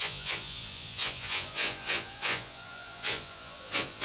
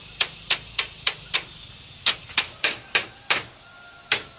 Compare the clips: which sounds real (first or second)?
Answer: second